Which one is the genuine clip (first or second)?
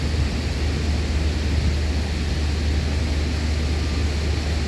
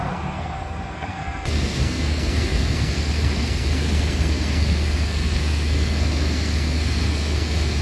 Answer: first